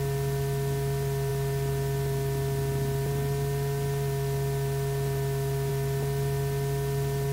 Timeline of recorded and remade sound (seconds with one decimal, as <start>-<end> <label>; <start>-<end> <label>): 0.0-7.3 recorded